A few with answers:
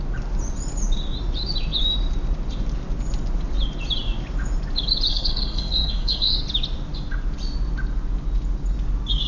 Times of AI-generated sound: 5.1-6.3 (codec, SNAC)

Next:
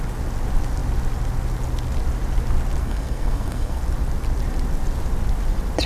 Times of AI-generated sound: 2.8-3.8 (codec, SNAC)